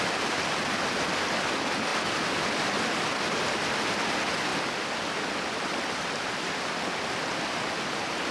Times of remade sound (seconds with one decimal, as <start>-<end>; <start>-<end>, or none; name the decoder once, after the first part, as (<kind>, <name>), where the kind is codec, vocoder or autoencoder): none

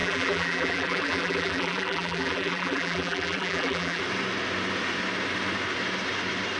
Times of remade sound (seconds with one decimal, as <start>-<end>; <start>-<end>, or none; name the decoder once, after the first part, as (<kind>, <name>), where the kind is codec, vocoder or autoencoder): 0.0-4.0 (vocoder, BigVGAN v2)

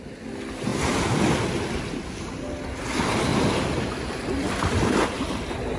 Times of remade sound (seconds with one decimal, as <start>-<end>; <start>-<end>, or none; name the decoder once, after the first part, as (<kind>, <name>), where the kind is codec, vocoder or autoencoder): 3.3-5.3 (vocoder, BigVGAN v2)